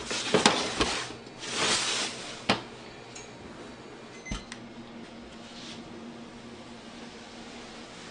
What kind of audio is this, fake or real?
real